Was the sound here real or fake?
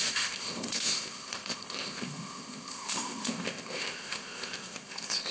fake